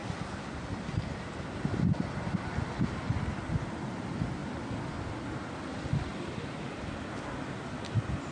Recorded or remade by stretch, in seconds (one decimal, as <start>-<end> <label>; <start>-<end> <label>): 0.0-8.3 recorded